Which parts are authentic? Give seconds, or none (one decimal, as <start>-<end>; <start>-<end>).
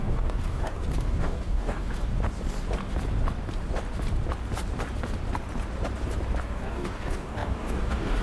2.1-6.4